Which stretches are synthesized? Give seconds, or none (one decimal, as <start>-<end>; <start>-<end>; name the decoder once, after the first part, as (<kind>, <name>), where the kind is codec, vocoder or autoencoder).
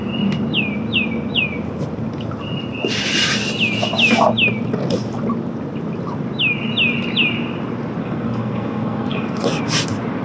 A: 8.0-9.6 (codec, SNAC)